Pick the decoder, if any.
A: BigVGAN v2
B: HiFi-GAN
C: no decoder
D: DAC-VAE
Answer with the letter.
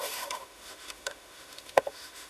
D